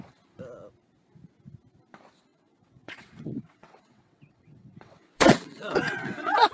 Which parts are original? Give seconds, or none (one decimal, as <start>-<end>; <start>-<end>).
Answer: 0.0-2.3